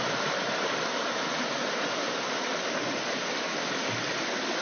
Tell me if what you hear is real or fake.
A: real